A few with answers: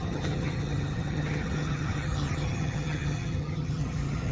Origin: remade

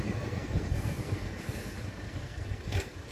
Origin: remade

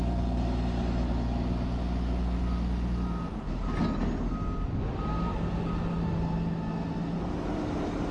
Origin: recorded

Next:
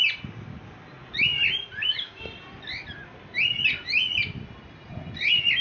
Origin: recorded